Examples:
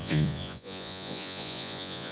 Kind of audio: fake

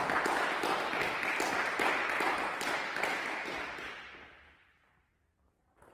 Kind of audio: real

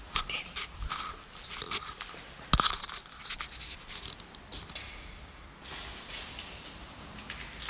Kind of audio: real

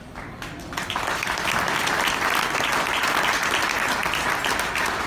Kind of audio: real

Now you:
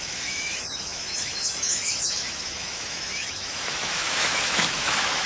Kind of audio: fake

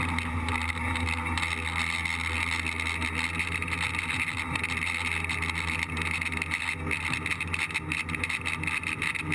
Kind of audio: real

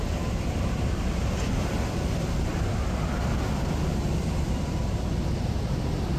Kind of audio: fake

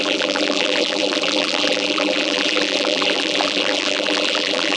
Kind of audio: fake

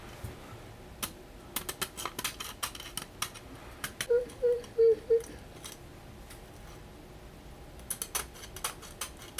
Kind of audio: real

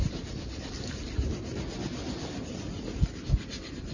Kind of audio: real